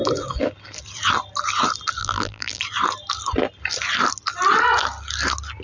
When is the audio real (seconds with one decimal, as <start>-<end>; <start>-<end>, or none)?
0.0-2.0; 2.6-5.6